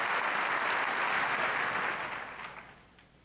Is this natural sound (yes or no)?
yes